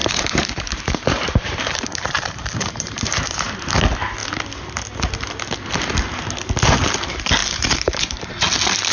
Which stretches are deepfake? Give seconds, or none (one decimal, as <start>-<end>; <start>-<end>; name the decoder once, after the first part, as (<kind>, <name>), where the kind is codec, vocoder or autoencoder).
0.0-3.6 (vocoder, BigVGAN v2); 7.4-8.3